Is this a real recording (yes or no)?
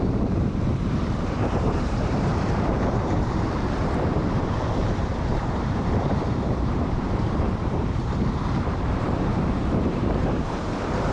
no